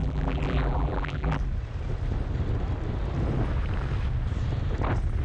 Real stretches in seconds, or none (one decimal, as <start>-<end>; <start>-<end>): 1.4-5.2